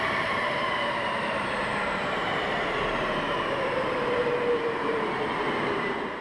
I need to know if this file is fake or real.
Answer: fake